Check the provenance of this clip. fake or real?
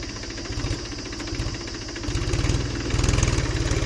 real